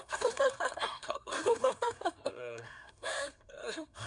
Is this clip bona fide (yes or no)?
no